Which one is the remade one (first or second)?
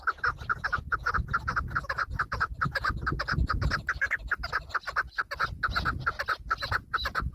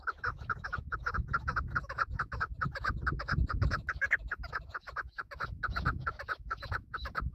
second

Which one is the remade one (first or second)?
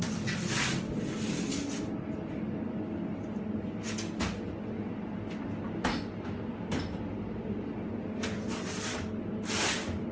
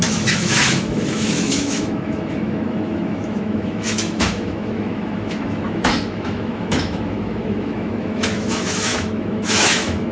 second